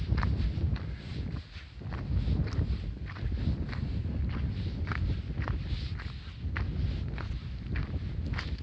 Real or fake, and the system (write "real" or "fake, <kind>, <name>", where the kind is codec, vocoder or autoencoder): real